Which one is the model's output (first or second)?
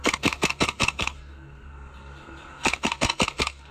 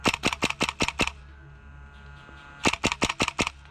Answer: first